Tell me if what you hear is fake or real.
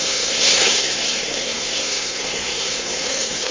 fake